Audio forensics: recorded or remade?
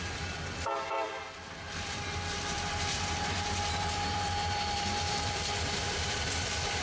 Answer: remade